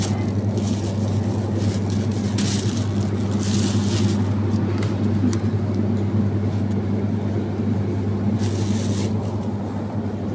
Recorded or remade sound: recorded